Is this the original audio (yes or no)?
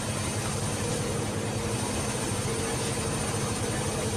yes